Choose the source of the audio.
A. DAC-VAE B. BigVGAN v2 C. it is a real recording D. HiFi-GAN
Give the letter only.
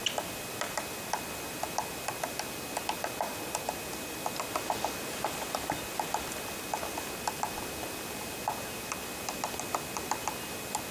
C